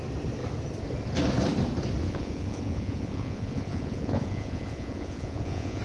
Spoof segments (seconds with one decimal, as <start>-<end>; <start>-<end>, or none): 2.0-5.8